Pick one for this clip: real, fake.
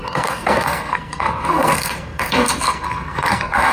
fake